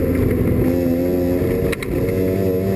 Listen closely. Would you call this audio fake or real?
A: real